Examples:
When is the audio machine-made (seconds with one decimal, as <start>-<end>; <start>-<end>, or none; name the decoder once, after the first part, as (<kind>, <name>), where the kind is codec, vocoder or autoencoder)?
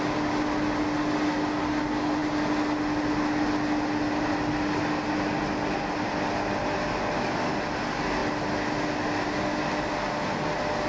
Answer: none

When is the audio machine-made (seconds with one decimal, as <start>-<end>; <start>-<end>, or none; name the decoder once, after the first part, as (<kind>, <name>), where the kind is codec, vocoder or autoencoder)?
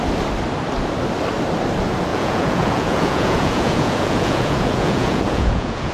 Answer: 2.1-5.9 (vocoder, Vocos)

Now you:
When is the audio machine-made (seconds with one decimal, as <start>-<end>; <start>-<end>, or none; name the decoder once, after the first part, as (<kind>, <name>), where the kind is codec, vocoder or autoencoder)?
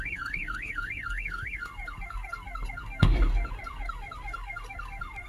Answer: 0.0-5.3 (codec, SNAC)